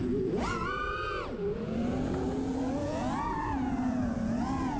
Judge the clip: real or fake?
fake